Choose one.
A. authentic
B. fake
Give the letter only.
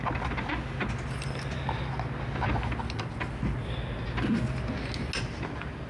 A